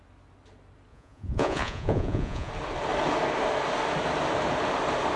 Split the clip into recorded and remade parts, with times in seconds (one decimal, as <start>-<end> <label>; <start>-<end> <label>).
0.0-0.9 recorded; 0.9-2.5 remade; 2.5-5.2 recorded

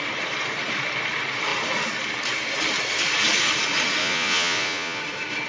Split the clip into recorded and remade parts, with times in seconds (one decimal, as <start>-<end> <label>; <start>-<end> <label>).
0.0-4.0 recorded; 4.0-5.0 remade; 5.0-5.5 recorded